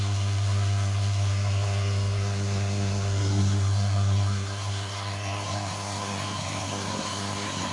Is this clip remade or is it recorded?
remade